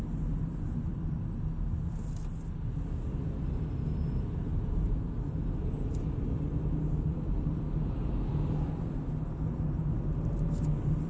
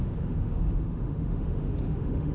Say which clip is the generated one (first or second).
second